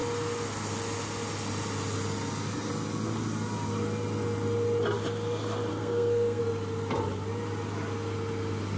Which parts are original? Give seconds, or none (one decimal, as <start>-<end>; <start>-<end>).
0.0-5.7; 6.4-8.8